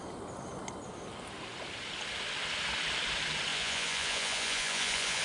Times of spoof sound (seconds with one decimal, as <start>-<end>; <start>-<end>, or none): 3.5-5.2